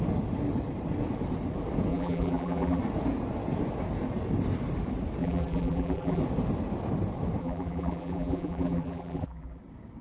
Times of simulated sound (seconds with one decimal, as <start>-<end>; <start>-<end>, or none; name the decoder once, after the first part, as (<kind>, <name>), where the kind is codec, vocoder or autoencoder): 1.9-2.8 (vocoder, BigVGAN v2); 5.2-6.2; 7.4-9.6